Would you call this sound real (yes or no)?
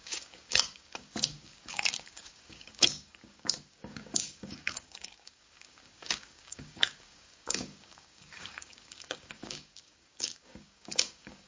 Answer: no